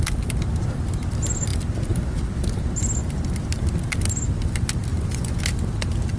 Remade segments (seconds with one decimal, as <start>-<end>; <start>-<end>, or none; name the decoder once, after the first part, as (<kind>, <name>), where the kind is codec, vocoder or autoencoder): 4.9-5.4 (vocoder, Vocos)